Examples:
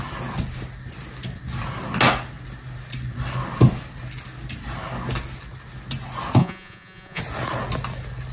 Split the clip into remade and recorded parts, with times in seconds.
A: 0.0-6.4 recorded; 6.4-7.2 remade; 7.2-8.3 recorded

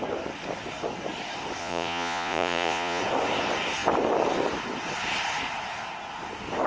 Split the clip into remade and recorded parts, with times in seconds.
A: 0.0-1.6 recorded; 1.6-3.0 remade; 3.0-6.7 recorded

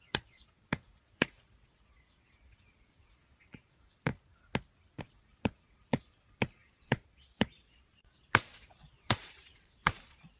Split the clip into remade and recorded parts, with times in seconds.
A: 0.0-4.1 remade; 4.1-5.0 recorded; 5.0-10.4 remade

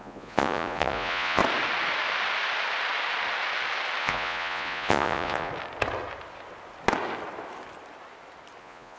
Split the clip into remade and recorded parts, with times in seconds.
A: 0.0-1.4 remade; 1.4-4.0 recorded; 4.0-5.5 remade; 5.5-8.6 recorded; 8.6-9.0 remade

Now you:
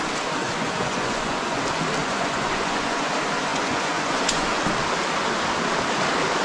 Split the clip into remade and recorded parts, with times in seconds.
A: 0.0-0.4 recorded; 0.4-1.6 remade; 1.6-2.0 recorded; 2.0-3.1 remade; 3.1-3.5 recorded; 3.5-4.6 remade; 4.6-6.4 recorded